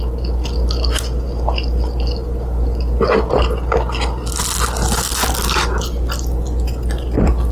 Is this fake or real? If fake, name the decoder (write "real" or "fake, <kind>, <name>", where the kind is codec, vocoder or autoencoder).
real